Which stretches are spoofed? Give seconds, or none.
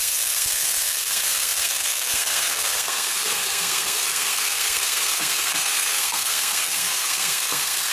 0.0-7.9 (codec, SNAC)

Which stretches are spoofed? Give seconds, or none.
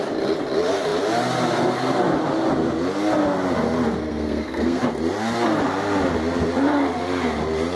4.1-4.8 (codec, SNAC)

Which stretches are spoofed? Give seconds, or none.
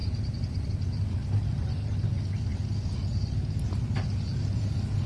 none